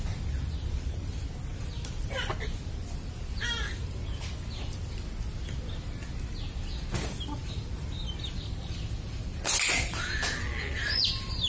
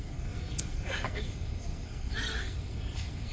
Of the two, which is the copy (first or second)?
second